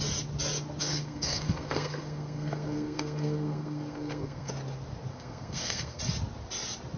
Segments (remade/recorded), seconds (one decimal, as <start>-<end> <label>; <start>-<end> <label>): 0.0-0.8 recorded; 0.8-4.5 remade; 4.5-5.1 recorded; 5.1-6.0 remade; 6.0-7.0 recorded